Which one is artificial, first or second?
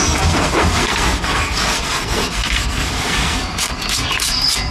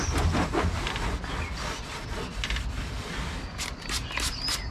first